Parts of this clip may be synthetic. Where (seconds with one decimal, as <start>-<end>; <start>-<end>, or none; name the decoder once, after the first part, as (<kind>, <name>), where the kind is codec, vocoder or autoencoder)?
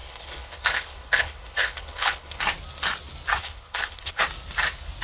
0.0-2.4 (codec, HILCodec); 3.4-4.2